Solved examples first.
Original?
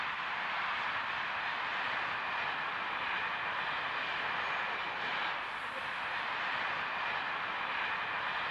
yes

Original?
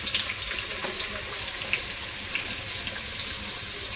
yes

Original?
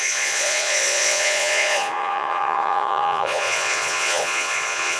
no